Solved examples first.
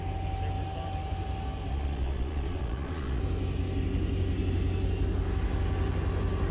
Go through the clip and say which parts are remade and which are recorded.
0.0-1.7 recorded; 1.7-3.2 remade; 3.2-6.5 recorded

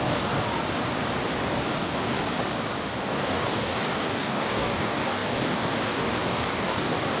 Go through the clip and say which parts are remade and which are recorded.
0.0-0.4 remade; 0.4-1.5 recorded; 1.5-2.3 remade; 2.3-3.0 recorded; 3.0-7.2 remade

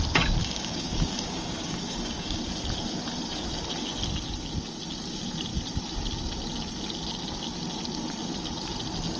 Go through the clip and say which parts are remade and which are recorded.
0.0-0.4 recorded; 0.4-2.4 remade; 2.4-9.2 recorded

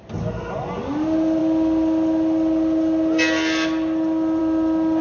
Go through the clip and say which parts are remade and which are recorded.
0.0-5.0 recorded

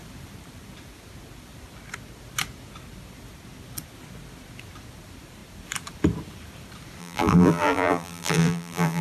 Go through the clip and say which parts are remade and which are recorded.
0.0-7.0 recorded; 7.0-9.0 remade

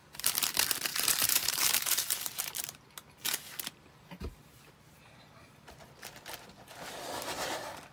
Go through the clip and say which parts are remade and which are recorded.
0.0-0.5 remade; 0.5-0.9 recorded; 0.9-5.5 remade; 5.5-7.9 recorded

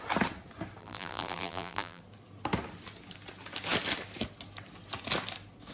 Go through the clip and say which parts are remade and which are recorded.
0.0-0.8 recorded; 0.8-2.0 remade; 2.0-5.7 recorded

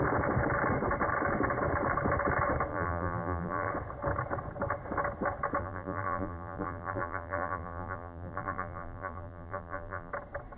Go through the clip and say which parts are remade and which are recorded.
0.0-2.7 recorded; 2.7-3.7 remade; 3.7-5.6 recorded; 5.6-10.1 remade; 10.1-10.6 recorded